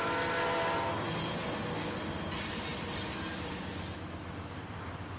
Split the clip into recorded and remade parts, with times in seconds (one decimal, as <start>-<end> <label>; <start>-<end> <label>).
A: 0.0-2.7 recorded; 2.7-3.5 remade; 3.5-5.2 recorded